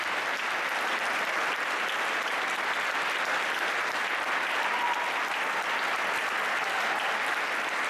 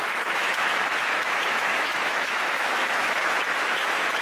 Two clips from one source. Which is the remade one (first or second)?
second